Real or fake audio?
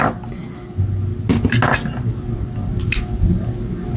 real